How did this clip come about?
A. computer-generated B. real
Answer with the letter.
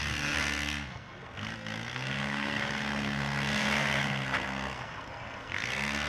A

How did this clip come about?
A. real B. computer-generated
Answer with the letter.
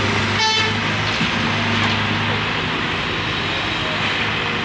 A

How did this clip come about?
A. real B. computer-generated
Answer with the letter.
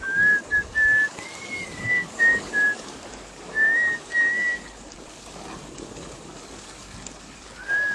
B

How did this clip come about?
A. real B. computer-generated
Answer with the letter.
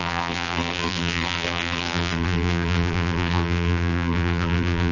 B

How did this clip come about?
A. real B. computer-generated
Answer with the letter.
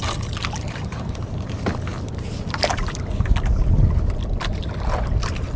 A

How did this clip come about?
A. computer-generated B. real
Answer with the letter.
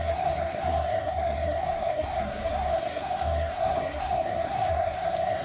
A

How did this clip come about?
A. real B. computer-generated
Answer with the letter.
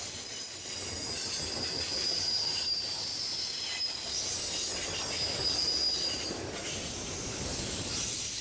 A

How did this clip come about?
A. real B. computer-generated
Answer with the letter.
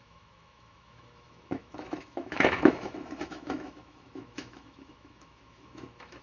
B